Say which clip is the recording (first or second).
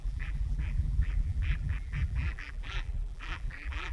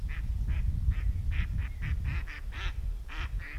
second